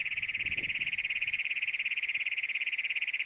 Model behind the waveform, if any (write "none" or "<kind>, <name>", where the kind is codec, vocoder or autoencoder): vocoder, Vocos